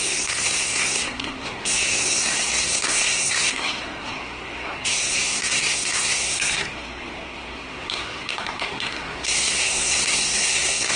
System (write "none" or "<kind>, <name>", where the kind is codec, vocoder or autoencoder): codec, SNAC